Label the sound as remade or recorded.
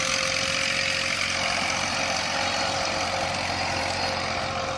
recorded